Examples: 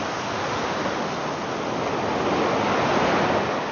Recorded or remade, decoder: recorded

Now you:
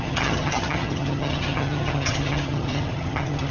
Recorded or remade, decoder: remade, vocoder, HiFi-GAN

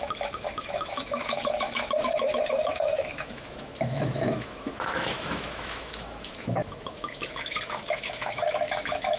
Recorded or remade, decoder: remade, autoencoder, DAC-VAE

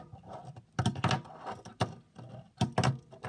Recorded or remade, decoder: recorded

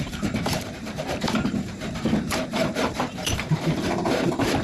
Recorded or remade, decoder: remade, vocoder, BigVGAN v2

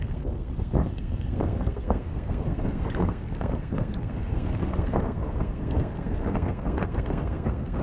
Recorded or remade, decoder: remade, codec, SNAC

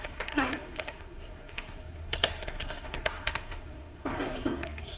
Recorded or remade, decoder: remade, codec, SNAC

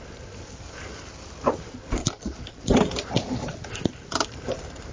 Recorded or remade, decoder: recorded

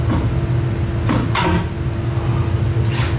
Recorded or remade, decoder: recorded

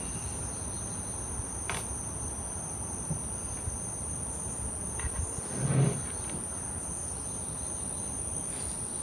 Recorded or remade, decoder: recorded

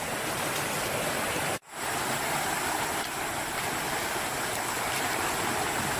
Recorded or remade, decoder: recorded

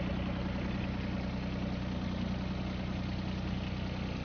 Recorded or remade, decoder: recorded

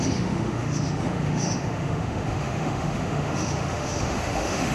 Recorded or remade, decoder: remade, autoencoder, DAC-VAE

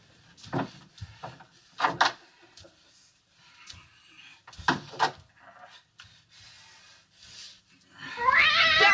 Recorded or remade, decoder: recorded